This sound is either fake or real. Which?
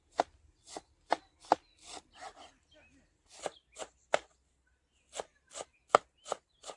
real